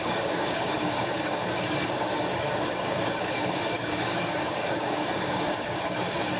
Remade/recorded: remade